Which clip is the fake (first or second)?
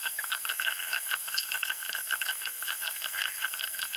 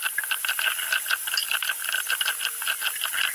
first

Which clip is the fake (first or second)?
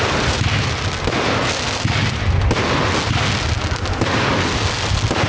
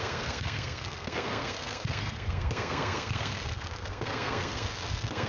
second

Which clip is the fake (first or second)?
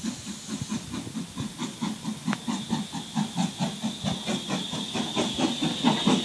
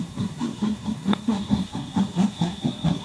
second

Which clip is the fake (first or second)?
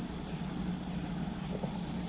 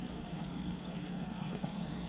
second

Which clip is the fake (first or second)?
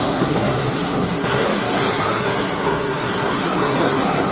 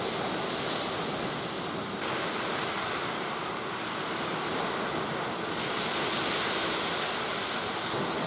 first